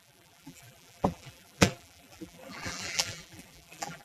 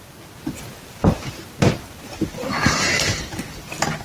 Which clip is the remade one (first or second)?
first